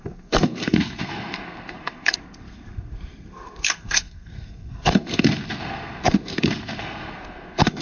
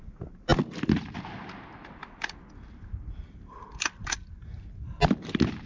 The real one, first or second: second